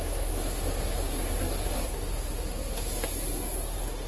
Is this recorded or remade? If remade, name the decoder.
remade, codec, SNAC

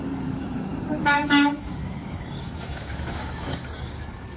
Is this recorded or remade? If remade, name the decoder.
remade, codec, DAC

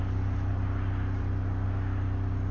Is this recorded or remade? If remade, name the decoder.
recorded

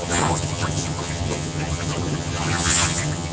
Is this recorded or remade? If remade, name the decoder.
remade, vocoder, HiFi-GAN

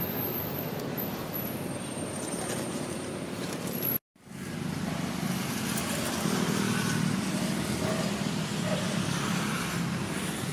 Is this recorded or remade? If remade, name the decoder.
recorded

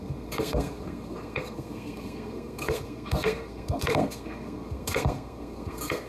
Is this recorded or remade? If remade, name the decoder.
remade, codec, SNAC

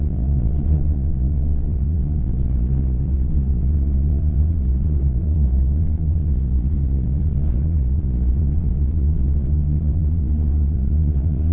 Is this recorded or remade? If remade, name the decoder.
remade, vocoder, Vocos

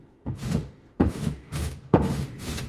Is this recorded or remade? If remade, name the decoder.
remade, autoencoder, DAC-VAE